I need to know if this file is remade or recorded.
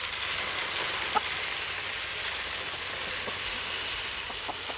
recorded